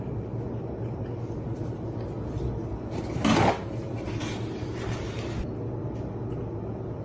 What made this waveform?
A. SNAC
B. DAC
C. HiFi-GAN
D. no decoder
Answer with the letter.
D